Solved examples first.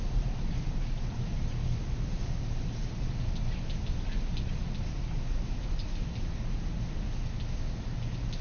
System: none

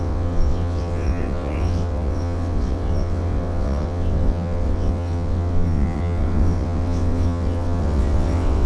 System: vocoder, WaveNeXt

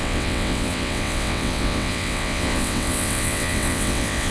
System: vocoder, WaveNeXt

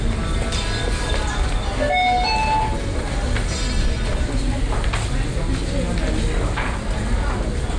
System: none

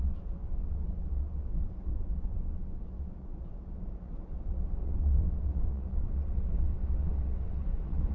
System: vocoder, WaveNeXt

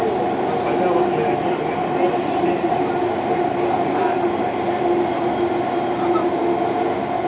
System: none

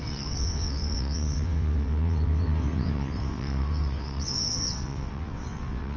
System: vocoder, WaveNeXt